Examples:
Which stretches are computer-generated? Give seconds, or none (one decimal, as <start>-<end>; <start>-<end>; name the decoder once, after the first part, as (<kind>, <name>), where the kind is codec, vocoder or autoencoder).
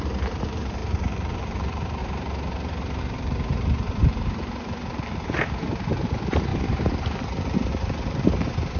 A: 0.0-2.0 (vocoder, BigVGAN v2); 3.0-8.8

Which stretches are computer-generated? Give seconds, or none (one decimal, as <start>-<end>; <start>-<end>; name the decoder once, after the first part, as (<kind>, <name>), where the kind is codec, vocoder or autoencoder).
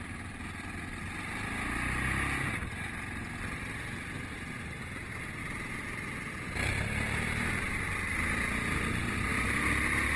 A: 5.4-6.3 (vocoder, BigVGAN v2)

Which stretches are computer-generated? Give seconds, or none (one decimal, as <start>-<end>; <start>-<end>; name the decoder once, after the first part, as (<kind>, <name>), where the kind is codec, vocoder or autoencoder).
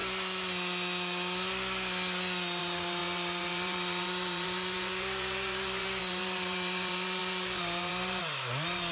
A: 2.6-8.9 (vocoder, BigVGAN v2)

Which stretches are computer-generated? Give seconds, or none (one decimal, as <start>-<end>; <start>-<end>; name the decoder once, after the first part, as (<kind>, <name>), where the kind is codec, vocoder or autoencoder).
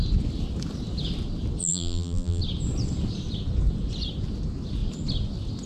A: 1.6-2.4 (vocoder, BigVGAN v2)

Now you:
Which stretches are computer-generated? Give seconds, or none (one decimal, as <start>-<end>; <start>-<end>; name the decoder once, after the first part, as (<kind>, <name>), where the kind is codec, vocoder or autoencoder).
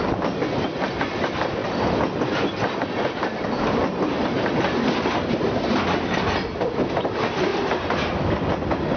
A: 1.6-5.6 (vocoder, BigVGAN v2); 7.5-8.1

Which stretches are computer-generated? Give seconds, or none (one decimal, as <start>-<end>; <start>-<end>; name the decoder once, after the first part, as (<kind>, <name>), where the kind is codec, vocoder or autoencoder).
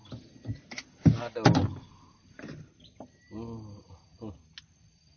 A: none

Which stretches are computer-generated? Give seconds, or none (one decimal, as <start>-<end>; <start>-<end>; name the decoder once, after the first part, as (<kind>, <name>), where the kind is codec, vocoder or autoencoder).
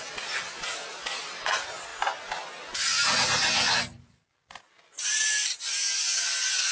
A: 0.0-1.9 (vocoder, BigVGAN v2); 5.9-6.7